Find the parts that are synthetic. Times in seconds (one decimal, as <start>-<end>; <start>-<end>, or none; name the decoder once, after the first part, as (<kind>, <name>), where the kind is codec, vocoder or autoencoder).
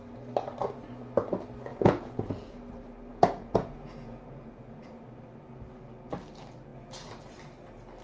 1.7-2.6 (vocoder, Vocos); 3.1-5.0